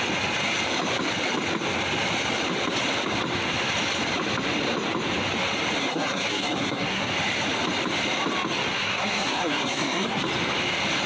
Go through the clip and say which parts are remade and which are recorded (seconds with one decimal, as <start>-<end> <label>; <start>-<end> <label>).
0.0-5.8 recorded; 5.8-7.1 remade; 7.1-8.7 recorded; 8.7-10.2 remade; 10.2-11.1 recorded